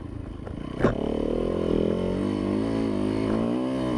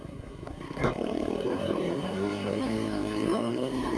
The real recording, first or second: first